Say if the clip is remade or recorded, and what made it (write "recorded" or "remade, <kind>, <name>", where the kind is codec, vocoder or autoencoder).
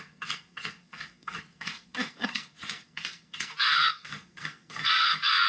remade, codec, SNAC